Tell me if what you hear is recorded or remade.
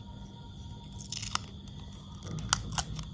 recorded